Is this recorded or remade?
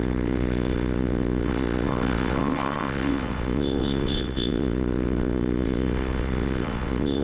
remade